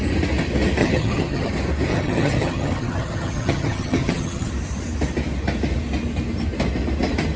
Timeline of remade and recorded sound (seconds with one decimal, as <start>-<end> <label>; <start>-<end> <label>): 0.0-0.8 recorded; 0.8-1.5 remade; 1.5-1.9 recorded; 1.9-4.5 remade; 4.5-7.4 recorded

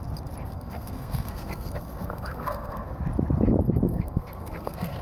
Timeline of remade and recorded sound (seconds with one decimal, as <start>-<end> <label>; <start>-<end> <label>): 0.0-0.4 recorded; 0.4-3.0 remade; 3.0-3.9 recorded; 3.9-5.0 remade

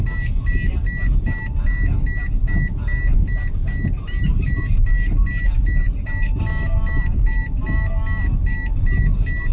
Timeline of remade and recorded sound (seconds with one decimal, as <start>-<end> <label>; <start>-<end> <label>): 0.0-9.5 recorded

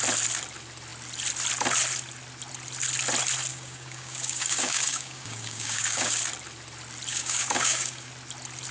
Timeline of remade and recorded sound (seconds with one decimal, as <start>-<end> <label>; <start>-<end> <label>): 0.0-3.5 recorded; 3.5-6.2 remade; 6.2-7.1 recorded; 7.1-8.1 remade; 8.1-8.7 recorded

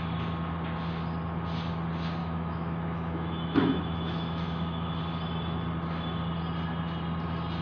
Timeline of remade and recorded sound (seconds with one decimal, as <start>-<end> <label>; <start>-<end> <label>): 0.0-2.2 recorded; 2.2-5.0 remade; 5.0-7.6 recorded

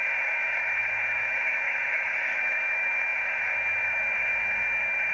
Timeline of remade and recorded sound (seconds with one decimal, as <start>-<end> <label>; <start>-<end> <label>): 0.0-5.1 remade

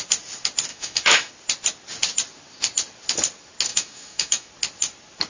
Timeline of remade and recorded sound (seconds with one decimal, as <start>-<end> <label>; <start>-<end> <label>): 0.0-0.7 recorded; 0.7-1.3 remade; 1.3-3.7 recorded; 3.7-4.5 remade; 4.5-5.3 recorded